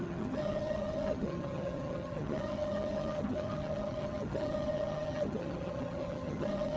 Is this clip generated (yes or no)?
yes